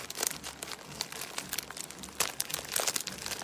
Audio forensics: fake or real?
real